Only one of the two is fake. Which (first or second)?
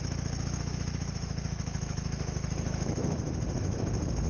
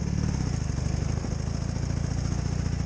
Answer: first